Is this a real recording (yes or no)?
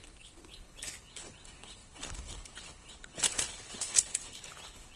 no